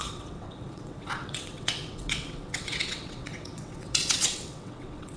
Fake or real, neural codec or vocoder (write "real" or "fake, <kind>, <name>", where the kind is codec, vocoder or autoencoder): fake, vocoder, WaveNeXt